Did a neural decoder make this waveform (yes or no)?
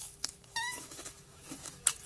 yes